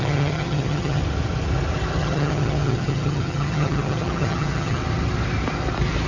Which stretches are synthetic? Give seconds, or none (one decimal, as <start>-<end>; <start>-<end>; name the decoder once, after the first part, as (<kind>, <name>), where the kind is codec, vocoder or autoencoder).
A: 0.0-1.0 (vocoder, HiFi-GAN); 2.0-4.8